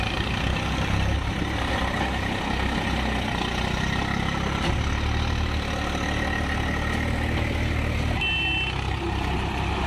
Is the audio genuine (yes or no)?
yes